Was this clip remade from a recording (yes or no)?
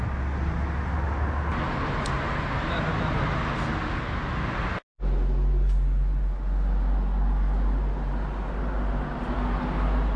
no